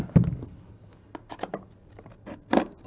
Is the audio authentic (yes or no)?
yes